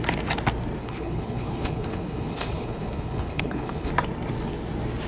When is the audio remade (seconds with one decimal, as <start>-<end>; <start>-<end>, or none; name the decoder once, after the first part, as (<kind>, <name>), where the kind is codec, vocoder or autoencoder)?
0.8-3.9 (codec, HILCodec)